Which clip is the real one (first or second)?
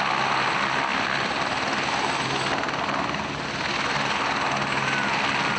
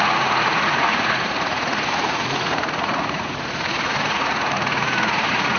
first